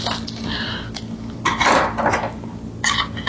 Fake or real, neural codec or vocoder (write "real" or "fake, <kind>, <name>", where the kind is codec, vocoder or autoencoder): real